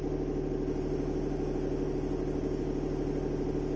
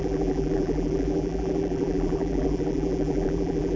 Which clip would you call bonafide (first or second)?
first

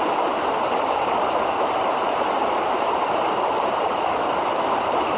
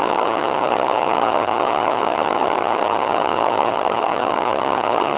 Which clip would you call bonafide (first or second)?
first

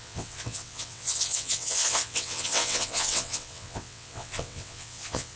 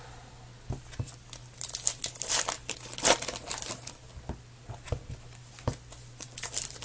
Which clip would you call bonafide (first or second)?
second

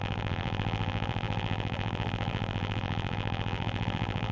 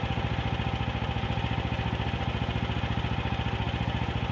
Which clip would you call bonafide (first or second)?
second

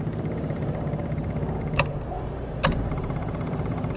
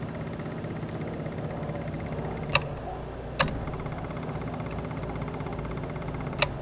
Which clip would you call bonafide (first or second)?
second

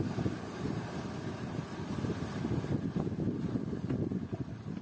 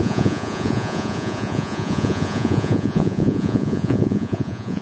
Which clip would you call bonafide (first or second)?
first